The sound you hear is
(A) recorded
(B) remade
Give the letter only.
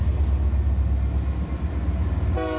A